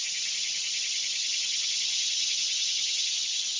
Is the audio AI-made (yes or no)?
yes